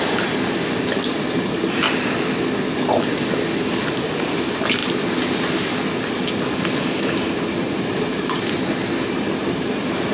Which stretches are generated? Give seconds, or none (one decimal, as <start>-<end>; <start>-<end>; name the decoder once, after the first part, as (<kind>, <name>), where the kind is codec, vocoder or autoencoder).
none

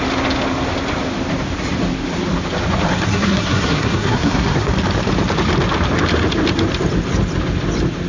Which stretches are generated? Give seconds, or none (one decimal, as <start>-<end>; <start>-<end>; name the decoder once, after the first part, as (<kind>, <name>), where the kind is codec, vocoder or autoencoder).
3.1-4.7 (codec, SNAC)

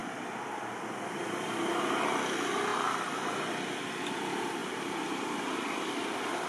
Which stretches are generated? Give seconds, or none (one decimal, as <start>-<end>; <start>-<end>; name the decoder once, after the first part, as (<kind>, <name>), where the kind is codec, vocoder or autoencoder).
4.6-5.4 (vocoder, BigVGAN v2)

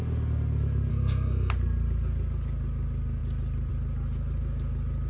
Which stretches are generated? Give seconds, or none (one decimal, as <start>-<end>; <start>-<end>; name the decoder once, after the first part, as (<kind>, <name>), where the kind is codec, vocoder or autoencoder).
0.9-1.5 (codec, SNAC)

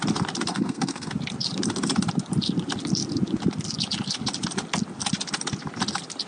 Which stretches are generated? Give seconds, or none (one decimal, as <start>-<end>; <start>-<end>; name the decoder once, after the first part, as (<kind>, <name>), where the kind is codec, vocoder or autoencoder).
0.5-1.1 (codec, SNAC)

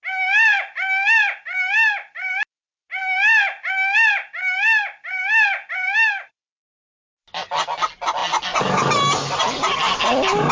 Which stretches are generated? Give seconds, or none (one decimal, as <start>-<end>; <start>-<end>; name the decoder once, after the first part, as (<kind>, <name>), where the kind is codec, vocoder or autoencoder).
none

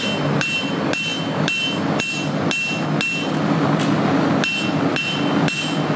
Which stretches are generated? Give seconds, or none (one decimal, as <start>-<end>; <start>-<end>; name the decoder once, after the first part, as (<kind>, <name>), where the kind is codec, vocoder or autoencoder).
none